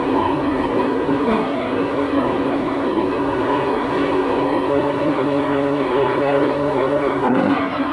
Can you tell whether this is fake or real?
fake